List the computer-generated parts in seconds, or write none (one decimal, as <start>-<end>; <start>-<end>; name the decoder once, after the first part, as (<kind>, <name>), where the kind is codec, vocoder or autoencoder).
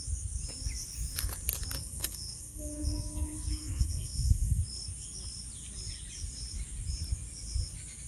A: 1.8-4.6 (codec, SNAC)